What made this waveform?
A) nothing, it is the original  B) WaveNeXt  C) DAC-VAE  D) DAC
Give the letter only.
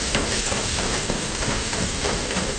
D